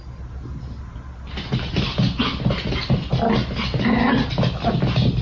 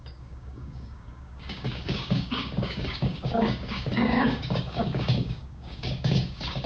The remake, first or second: second